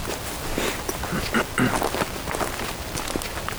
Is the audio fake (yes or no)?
no